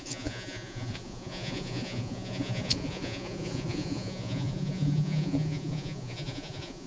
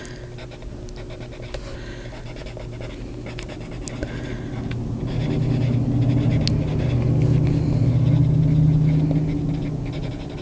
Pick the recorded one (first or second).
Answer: second